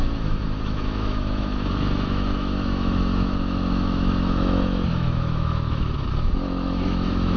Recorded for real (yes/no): no